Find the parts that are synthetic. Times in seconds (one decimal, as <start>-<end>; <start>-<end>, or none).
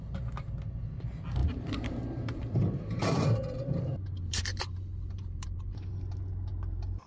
1.4-5.7